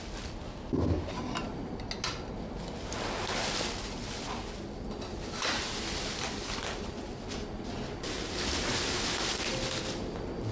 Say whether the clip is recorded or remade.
recorded